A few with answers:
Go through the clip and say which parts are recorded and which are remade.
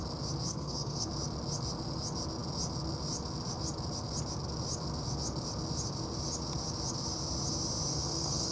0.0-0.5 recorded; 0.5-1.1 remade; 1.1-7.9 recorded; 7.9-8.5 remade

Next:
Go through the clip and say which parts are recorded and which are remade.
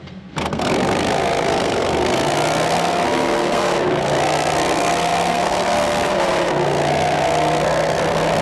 0.0-8.4 remade